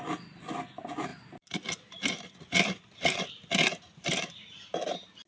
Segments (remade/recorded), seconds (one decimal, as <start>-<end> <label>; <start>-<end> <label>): 0.0-1.1 recorded; 1.1-3.3 remade; 3.3-5.3 recorded